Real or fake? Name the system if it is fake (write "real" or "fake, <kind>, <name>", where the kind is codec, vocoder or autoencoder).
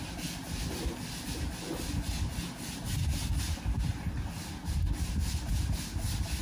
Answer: real